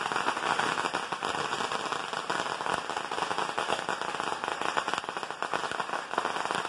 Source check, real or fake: real